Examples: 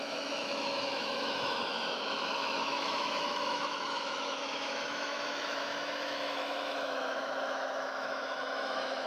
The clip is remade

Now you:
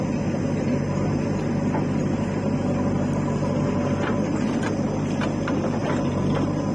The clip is recorded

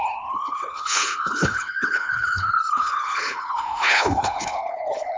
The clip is remade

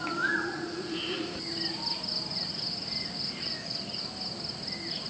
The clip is recorded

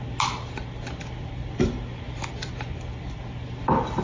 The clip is recorded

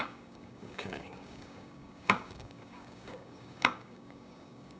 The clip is remade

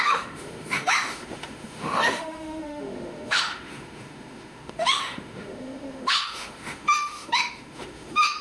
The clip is remade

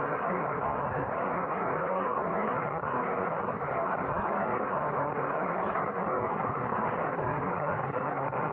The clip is remade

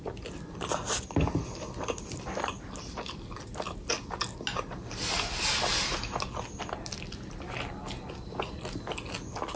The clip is recorded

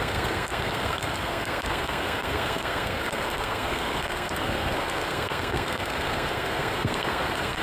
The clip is remade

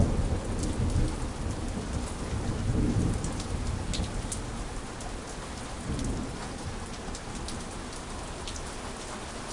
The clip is recorded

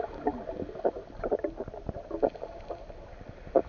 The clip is recorded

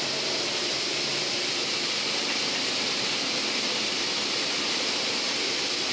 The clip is recorded